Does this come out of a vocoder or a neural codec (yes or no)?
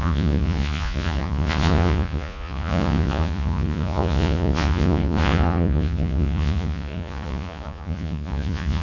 yes